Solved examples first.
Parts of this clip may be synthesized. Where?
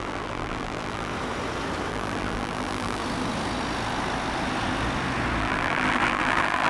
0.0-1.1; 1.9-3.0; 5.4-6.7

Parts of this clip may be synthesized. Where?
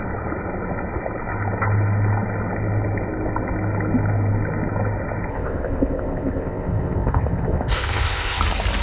5.3-8.4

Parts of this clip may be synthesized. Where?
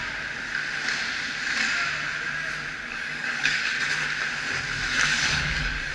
2.9-3.7; 5.1-5.9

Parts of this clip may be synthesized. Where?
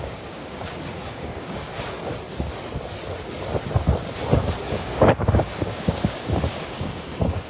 0.0-1.7; 4.4-7.5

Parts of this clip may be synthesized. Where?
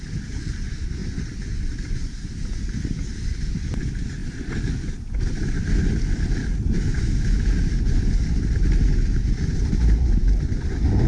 none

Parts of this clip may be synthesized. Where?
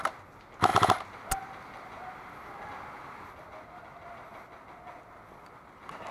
none